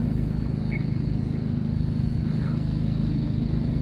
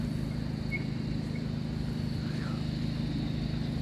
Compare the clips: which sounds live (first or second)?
second